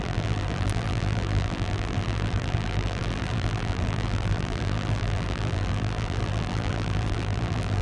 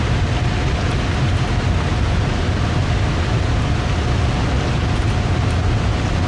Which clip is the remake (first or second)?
first